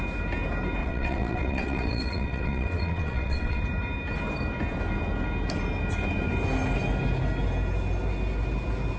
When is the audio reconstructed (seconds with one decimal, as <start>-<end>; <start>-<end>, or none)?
0.8-3.6